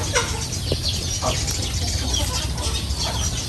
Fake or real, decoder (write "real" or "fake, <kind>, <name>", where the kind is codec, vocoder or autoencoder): real